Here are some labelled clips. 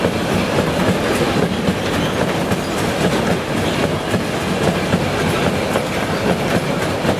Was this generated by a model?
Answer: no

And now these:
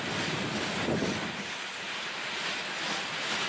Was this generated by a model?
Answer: no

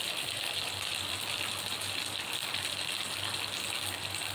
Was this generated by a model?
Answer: no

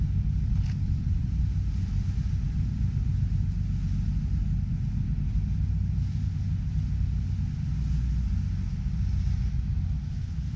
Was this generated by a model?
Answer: no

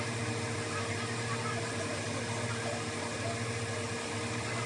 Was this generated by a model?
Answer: no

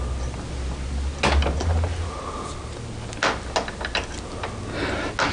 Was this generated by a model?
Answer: no